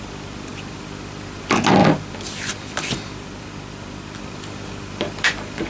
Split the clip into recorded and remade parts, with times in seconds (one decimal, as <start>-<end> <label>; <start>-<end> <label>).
0.0-0.5 recorded; 0.5-1.4 remade; 1.4-1.8 recorded; 1.8-4.2 remade; 4.2-5.7 recorded